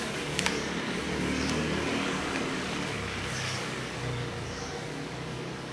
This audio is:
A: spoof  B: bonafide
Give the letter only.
A